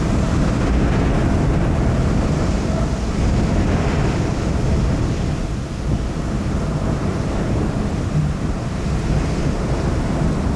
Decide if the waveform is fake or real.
real